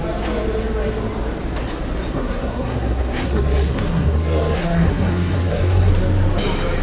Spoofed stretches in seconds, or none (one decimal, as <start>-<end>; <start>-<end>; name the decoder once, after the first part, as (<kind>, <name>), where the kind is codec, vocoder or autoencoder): 2.1-5.9 (codec, SNAC)